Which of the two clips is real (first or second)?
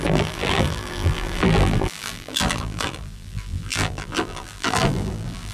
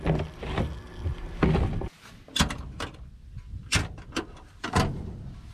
second